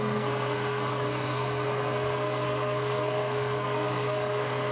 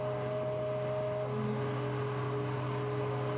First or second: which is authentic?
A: second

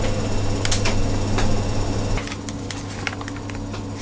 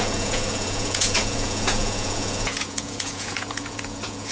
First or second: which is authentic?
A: first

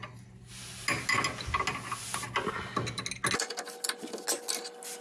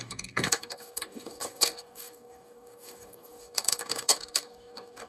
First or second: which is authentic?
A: first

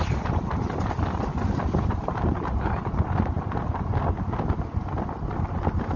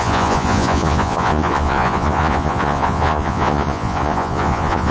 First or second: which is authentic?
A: first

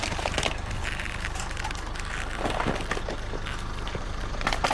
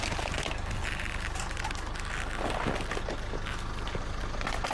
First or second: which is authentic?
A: second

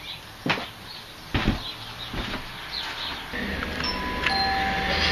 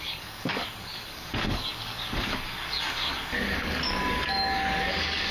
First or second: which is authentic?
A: first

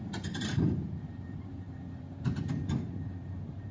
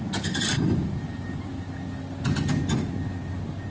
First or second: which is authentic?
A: second